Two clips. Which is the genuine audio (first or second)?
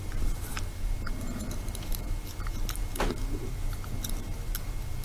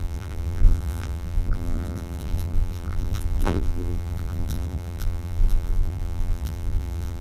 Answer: first